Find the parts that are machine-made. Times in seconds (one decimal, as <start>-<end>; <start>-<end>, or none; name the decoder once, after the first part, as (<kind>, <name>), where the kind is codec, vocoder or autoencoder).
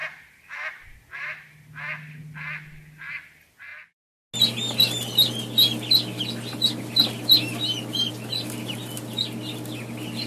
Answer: none